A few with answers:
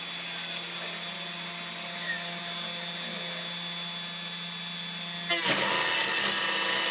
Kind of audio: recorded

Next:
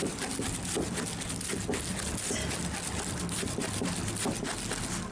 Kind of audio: recorded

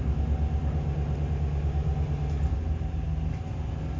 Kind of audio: recorded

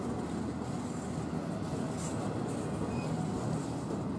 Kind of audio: recorded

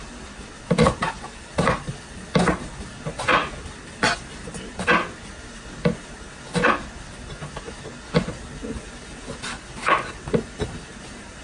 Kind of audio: recorded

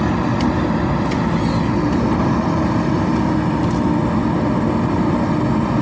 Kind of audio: recorded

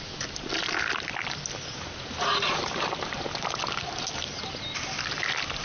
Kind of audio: recorded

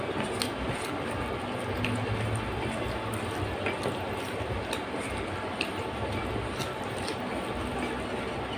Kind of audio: recorded